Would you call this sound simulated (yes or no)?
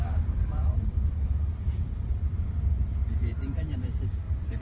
yes